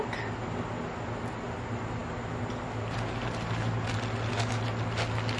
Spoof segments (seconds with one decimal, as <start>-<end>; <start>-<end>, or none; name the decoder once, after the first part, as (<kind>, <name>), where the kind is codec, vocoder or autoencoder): none